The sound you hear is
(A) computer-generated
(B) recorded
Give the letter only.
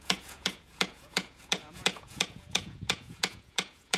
A